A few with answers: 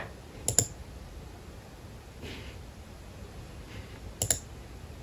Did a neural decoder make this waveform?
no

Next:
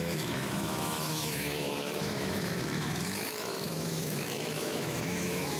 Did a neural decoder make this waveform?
yes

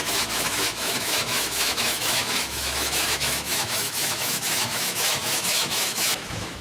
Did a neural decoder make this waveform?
yes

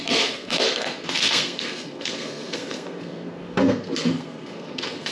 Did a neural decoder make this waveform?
yes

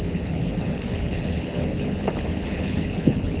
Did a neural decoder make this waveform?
yes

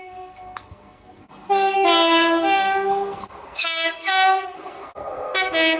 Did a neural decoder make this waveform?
yes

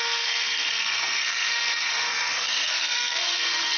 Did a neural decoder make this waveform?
yes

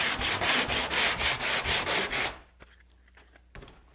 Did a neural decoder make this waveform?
no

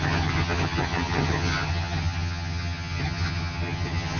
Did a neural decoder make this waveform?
yes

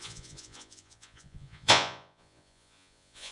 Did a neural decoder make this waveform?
yes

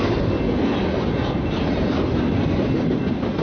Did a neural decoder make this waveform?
no